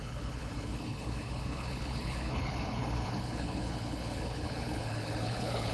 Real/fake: fake